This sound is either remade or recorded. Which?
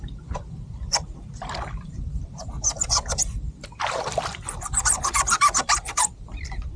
remade